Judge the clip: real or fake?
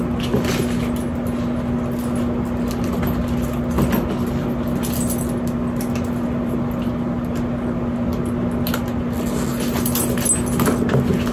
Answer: real